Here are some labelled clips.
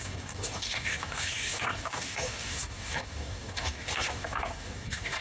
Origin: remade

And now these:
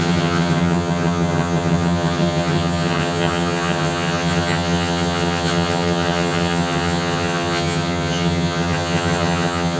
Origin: remade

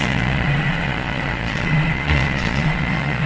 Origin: remade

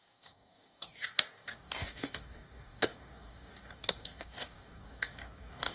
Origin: remade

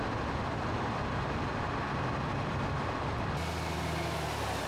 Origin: recorded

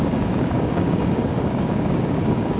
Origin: remade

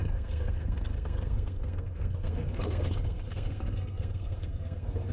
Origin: remade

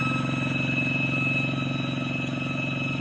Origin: recorded